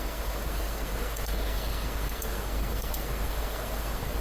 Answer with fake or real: fake